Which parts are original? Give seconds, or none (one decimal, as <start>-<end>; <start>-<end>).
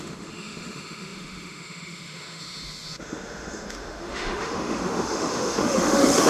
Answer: none